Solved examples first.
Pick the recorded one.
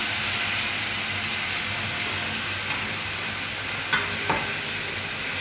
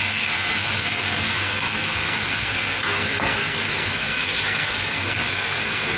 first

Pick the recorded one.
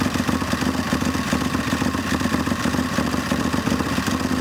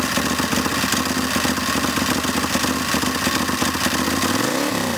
second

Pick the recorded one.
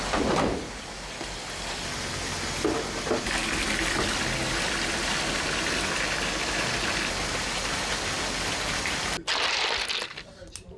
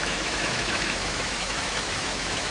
first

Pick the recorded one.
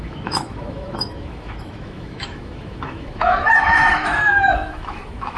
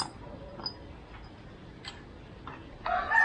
second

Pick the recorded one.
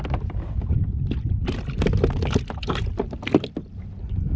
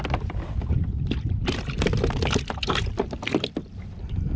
first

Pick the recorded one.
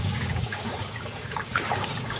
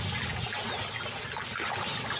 second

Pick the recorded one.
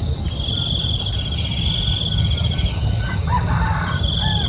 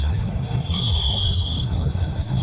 first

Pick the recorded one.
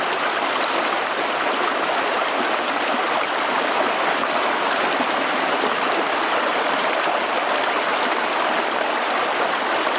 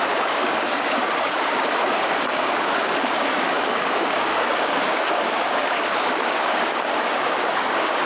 first